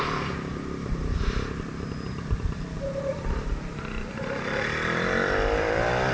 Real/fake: fake